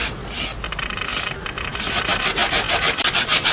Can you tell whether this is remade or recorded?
recorded